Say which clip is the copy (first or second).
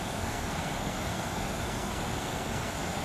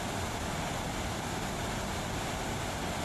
first